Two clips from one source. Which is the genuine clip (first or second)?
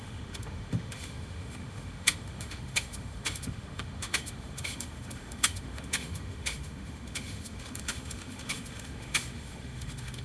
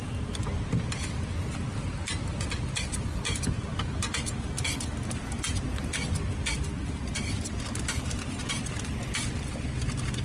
second